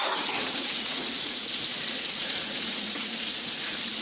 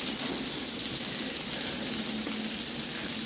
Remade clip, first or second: first